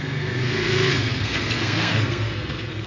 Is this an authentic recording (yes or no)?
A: no